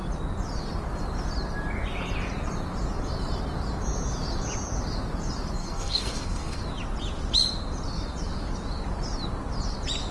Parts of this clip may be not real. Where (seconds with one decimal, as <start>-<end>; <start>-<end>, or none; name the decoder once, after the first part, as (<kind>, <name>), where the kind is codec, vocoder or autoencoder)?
5.6-6.6 (codec, SNAC)